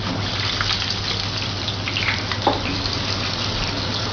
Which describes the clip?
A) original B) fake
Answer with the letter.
A